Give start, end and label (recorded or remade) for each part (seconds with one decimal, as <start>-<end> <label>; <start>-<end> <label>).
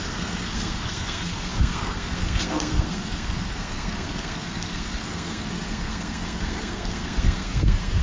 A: 0.0-8.0 remade